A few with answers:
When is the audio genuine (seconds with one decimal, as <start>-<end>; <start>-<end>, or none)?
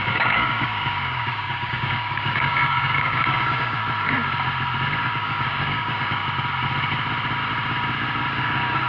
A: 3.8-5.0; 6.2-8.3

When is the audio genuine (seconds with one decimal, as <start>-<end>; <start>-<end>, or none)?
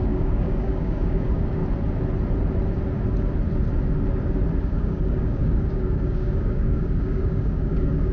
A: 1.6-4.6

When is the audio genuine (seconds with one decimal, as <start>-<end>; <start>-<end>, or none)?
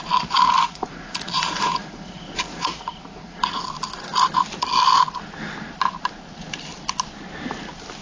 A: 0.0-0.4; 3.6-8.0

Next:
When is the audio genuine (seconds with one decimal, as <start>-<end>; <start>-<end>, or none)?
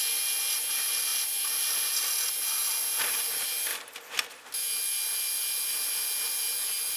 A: 0.0-7.0